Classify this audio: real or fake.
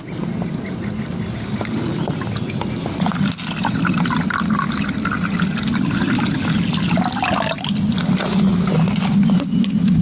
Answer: real